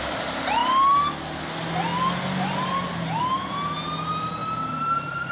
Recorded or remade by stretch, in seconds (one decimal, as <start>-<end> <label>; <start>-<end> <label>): 0.0-5.3 recorded